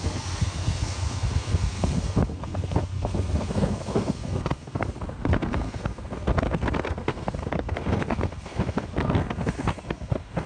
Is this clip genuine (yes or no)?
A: no